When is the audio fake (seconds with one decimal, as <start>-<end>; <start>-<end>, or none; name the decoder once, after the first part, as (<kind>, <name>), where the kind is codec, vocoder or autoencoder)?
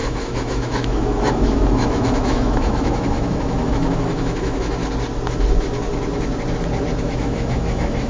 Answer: 0.0-4.8 (autoencoder, DAC-VAE); 7.0-8.1